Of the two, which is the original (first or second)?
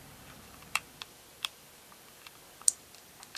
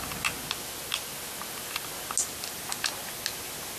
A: second